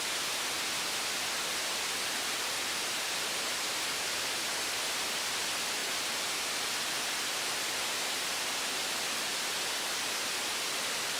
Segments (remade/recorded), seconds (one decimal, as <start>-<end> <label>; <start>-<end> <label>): 0.0-11.2 recorded